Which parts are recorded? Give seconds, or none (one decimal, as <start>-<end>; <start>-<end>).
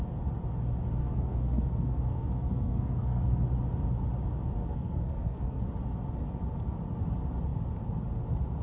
0.0-1.0; 3.2-4.6; 5.6-8.6